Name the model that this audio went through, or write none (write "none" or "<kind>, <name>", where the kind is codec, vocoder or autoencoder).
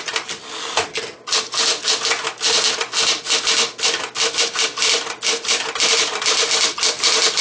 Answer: none